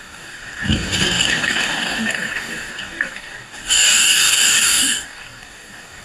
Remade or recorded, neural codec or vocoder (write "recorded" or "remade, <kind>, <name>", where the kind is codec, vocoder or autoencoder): remade, codec, DAC